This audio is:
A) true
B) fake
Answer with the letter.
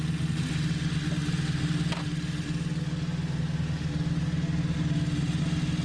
A